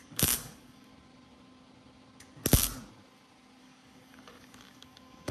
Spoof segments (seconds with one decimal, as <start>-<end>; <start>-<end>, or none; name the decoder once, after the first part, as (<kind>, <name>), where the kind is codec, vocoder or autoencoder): 0.0-0.9 (codec, DAC); 3.6-5.3